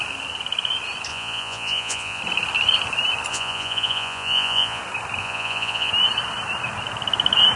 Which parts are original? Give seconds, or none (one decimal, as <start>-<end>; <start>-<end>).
0.0-1.1; 2.2-3.3; 4.8-5.2; 5.9-7.6